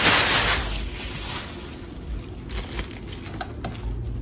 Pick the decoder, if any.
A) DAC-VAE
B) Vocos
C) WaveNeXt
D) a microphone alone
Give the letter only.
D